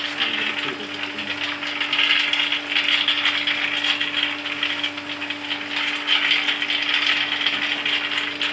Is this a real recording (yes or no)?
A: yes